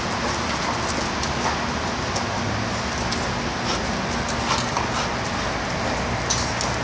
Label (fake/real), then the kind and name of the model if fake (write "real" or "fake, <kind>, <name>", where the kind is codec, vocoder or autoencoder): real